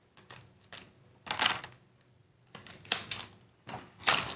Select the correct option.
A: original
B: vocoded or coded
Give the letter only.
A